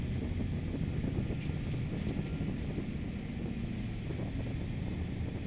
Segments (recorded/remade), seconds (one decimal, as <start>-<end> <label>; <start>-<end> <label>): 0.0-2.3 recorded; 2.3-5.5 remade